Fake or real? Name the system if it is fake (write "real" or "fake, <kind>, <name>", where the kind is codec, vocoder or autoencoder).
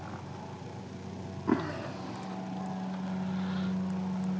real